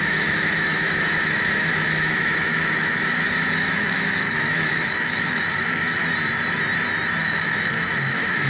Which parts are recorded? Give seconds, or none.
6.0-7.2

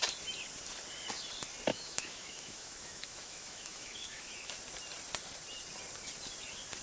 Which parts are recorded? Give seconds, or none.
0.0-1.7; 4.5-6.8

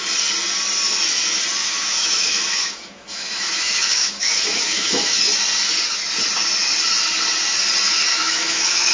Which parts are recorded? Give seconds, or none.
0.0-1.6; 5.2-8.1

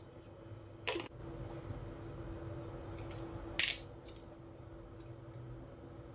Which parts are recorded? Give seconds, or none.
0.0-6.1

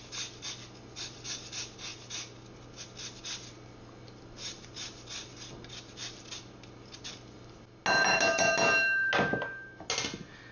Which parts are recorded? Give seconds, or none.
0.0-10.5